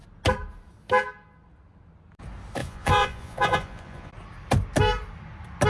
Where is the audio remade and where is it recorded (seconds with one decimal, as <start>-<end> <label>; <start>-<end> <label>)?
0.0-2.6 recorded; 2.6-4.1 remade; 4.1-5.7 recorded